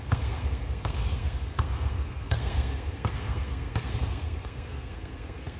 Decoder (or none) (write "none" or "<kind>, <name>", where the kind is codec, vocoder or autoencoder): codec, SNAC